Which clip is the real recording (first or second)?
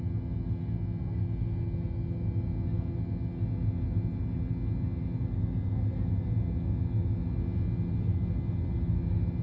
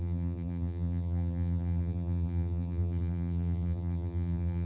first